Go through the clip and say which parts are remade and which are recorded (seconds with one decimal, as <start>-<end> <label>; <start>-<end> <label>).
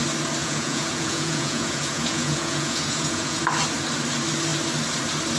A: 0.0-0.4 recorded; 0.4-3.4 remade; 3.4-5.4 recorded